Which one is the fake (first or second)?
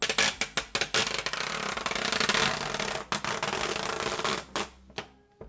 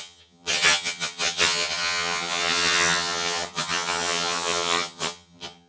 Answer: second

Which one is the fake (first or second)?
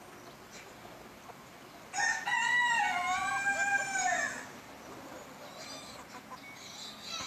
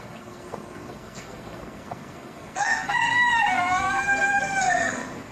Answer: second